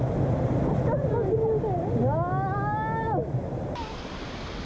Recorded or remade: recorded